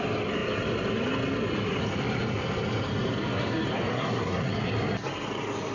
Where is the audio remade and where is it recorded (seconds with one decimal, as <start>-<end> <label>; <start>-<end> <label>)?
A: 0.0-3.9 recorded; 3.9-4.5 remade; 4.5-5.7 recorded

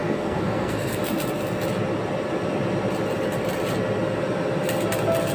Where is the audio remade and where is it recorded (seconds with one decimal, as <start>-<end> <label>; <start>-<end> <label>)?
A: 0.0-1.0 remade; 1.0-5.3 recorded

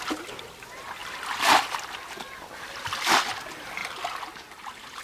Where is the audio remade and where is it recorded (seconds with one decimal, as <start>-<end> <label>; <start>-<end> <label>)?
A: 0.0-5.0 recorded

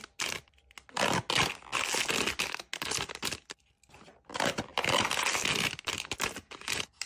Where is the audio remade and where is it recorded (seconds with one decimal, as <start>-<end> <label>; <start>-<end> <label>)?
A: 0.0-7.1 recorded

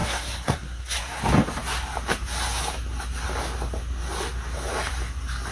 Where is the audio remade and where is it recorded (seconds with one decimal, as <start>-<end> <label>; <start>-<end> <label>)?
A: 0.0-1.2 remade; 1.2-5.5 recorded

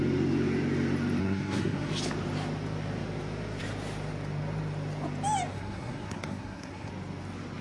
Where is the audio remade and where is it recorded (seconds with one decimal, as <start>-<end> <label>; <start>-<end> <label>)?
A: 0.0-1.2 recorded; 1.2-1.9 remade; 1.9-5.5 recorded; 5.5-6.9 remade; 6.9-7.6 recorded

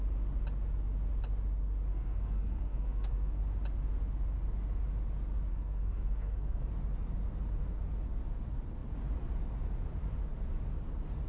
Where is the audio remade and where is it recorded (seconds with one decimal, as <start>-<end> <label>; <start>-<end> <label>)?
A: 0.0-1.9 recorded; 1.9-3.4 remade; 3.4-5.5 recorded; 5.5-6.7 remade; 6.7-11.3 recorded

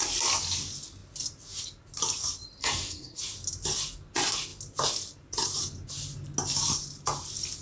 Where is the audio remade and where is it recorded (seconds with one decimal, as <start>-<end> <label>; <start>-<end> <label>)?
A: 0.0-2.6 recorded; 2.6-3.2 remade; 3.2-7.6 recorded